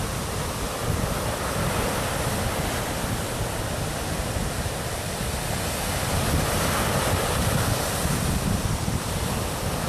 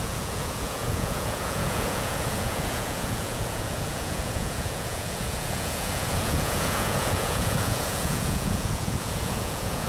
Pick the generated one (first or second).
second